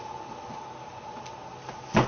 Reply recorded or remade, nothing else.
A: recorded